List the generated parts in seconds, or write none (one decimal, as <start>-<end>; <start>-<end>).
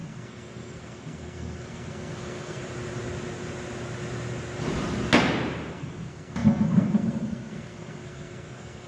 0.0-2.6; 5.7-8.9